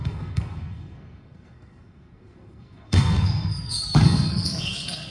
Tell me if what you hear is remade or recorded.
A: remade